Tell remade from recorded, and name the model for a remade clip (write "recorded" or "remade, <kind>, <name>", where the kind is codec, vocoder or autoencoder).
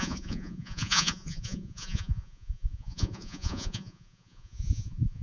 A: remade, vocoder, Vocos